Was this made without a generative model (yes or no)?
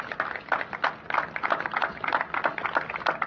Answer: yes